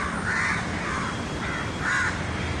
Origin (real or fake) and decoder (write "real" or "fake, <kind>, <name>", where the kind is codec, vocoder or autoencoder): real